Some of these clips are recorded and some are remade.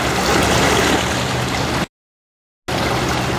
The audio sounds recorded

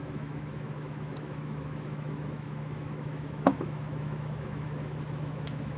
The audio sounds remade